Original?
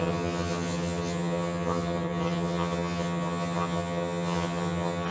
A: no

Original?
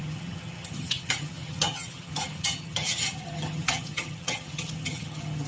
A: no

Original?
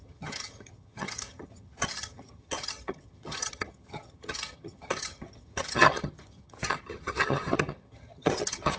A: no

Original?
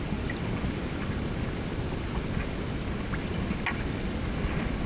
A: yes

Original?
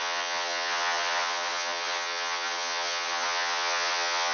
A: no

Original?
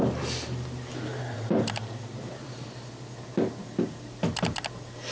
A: yes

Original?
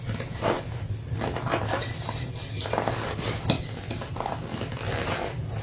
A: yes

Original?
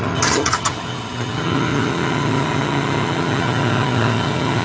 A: no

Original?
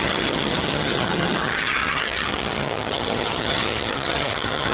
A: no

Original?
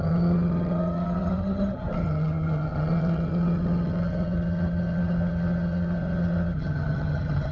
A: no